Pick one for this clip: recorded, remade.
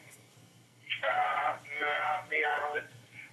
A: remade